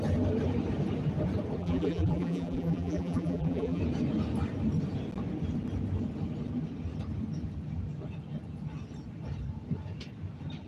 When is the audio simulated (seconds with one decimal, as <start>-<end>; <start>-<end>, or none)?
1.6-3.8